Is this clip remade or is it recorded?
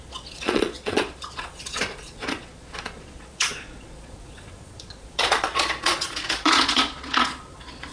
remade